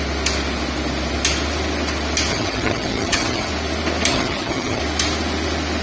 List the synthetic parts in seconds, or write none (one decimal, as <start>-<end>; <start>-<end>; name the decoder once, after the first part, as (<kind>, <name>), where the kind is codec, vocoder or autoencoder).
2.3-3.5 (vocoder, HiFi-GAN); 4.1-4.8